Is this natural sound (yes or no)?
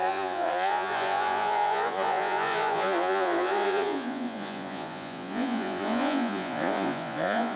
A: no